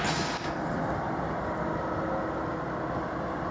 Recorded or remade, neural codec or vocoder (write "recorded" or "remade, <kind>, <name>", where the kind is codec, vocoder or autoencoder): recorded